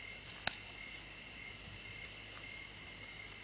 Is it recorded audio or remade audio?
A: recorded